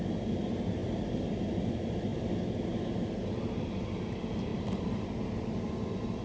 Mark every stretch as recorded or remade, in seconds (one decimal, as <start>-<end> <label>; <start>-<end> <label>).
0.0-0.8 recorded; 0.8-1.7 remade; 1.7-4.5 recorded; 4.5-5.1 remade; 5.1-6.2 recorded